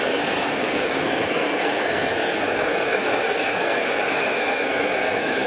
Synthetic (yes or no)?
yes